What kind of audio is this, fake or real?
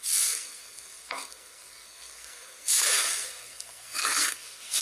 fake